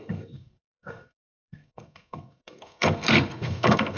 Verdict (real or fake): fake